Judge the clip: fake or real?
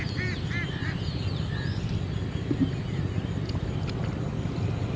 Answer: real